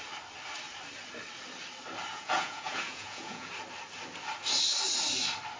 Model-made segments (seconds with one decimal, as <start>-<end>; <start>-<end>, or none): 2.1-3.5